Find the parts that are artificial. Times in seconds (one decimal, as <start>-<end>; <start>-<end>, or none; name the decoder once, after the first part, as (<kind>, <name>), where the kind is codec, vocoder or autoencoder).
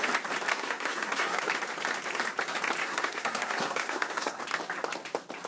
0.5-1.4 (codec, SNAC); 2.8-4.4